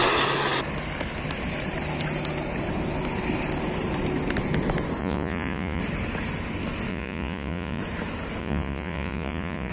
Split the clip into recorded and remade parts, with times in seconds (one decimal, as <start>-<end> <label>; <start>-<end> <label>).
0.0-5.0 recorded; 5.0-5.8 remade; 5.8-6.9 recorded; 6.9-7.8 remade; 7.8-8.4 recorded; 8.4-9.7 remade